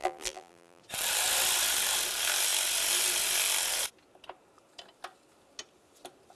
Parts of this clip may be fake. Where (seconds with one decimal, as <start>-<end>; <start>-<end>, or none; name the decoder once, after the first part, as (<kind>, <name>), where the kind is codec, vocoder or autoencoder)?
0.0-0.8 (vocoder, BigVGAN v2)